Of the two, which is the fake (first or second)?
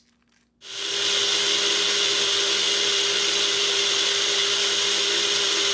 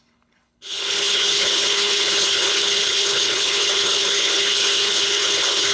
second